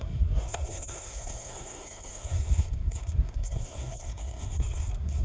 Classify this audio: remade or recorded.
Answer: remade